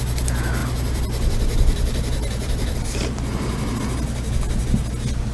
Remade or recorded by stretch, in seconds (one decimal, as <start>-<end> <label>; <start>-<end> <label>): 0.0-0.6 recorded; 0.6-3.8 remade; 3.8-5.3 recorded